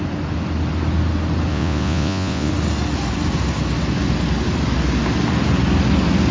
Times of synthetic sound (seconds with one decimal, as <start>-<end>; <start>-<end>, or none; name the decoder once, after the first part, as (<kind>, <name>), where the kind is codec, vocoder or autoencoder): 1.5-2.5 (vocoder, Vocos)